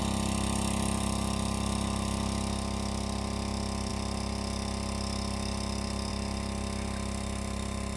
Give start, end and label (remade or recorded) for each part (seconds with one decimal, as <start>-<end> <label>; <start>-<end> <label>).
0.0-8.0 recorded